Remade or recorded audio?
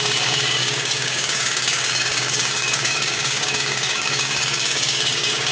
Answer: remade